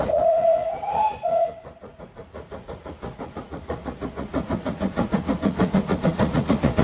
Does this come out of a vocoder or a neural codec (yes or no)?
yes